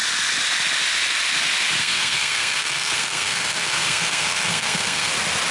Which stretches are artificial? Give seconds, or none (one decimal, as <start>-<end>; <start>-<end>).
1.8-5.1